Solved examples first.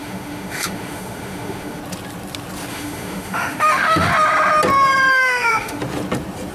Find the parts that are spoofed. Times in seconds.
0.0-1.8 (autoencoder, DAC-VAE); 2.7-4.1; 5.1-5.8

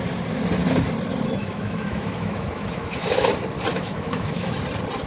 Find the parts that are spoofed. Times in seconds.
1.4-3.3 (autoencoder, DAC-VAE); 3.7-4.6

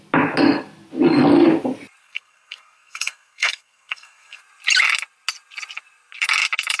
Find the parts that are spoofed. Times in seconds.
2.0-4.4 (codec, SNAC)

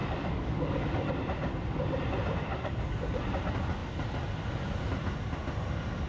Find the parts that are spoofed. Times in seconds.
0.0-1.1 (codec, DAC); 2.5-3.2

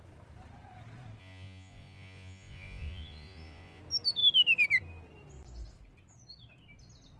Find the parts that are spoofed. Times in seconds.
1.2-3.8 (vocoder, Vocos)

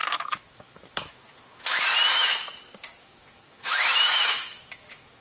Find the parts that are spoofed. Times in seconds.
0.0-1.9 (autoencoder, DAC-VAE); 3.0-5.2

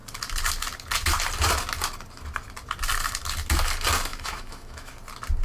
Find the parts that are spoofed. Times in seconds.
4.1-4.9 (autoencoder, DAC-VAE)